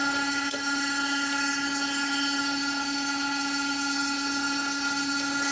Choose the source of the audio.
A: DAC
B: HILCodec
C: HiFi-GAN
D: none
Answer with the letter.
B